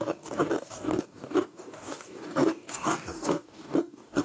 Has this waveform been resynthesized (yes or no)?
yes